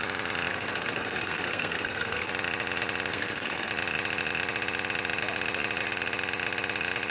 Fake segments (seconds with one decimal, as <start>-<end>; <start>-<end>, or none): 0.5-2.3; 3.1-3.7